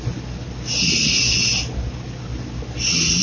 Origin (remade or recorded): recorded